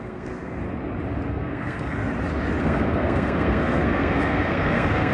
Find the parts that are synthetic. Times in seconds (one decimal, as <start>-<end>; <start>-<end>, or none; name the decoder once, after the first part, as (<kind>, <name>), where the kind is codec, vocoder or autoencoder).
0.0-0.6 (codec, SNAC); 1.3-2.0; 2.6-5.1